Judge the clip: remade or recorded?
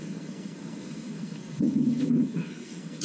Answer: remade